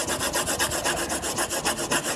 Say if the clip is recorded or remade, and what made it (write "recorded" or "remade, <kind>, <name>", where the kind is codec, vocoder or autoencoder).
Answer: recorded